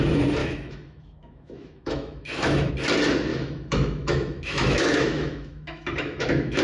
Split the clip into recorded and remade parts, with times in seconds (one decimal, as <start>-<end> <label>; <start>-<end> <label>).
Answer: 0.0-0.4 recorded; 0.4-2.7 remade; 2.7-3.3 recorded; 3.3-6.6 remade